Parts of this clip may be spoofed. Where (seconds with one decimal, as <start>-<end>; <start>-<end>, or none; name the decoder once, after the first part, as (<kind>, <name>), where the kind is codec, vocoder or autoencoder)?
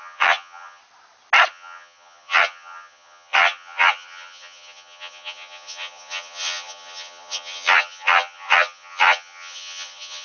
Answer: 0.0-0.8 (vocoder, HiFi-GAN); 1.5-10.2